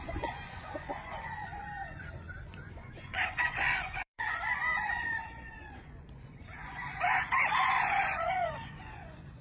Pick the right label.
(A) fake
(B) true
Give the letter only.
A